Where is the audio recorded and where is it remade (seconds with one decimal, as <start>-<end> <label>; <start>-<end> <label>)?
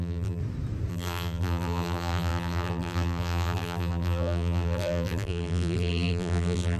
0.0-0.4 remade; 0.4-0.9 recorded; 0.9-6.8 remade